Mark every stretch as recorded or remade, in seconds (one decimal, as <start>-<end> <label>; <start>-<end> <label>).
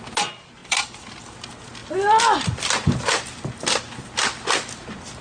0.0-0.6 recorded; 0.6-1.2 remade; 1.2-1.8 recorded; 1.8-3.9 remade; 3.9-5.2 recorded